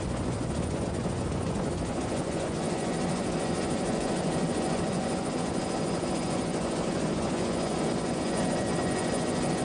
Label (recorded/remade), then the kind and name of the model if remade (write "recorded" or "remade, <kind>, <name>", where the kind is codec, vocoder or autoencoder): remade, vocoder, Vocos